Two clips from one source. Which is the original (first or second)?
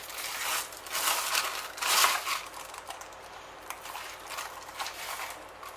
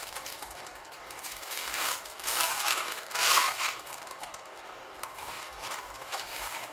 first